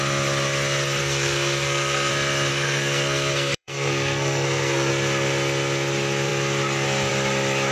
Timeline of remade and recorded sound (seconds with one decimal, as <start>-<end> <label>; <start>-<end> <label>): 0.0-1.0 recorded; 1.0-2.1 remade; 2.1-2.5 recorded; 2.5-4.9 remade; 4.9-7.7 recorded